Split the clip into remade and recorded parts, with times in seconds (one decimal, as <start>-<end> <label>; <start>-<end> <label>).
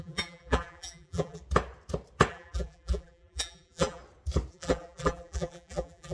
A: 0.0-1.4 remade; 1.4-2.3 recorded; 2.3-4.0 remade; 4.0-4.5 recorded; 4.5-6.1 remade